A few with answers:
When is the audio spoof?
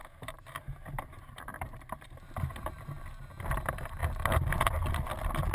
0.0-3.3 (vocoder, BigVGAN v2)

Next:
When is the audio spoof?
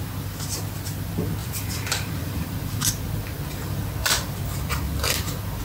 1.4-2.9 (vocoder, BigVGAN v2)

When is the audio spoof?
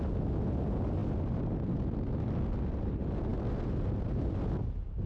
none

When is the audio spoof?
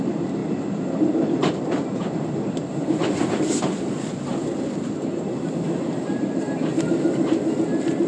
0.0-8.1 (vocoder, BigVGAN v2)